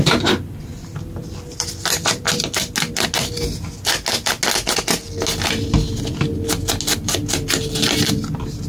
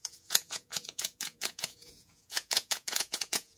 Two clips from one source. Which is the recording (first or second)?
first